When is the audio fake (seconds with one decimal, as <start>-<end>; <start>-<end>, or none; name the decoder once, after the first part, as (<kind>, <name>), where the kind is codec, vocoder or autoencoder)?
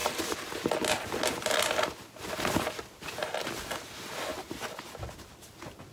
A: none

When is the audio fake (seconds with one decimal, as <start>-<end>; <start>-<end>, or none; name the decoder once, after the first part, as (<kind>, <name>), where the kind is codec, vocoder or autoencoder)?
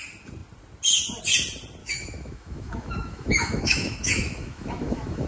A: 1.8-5.3 (autoencoder, DAC-VAE)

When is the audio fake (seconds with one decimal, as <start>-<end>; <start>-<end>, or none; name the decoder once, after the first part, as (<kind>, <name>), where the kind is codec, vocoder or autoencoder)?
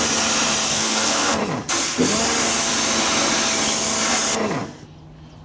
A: 0.7-1.4 (codec, SNAC)